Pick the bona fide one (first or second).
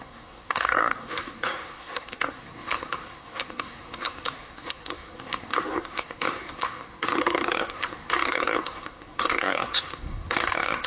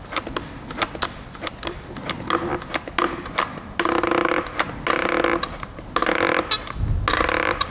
second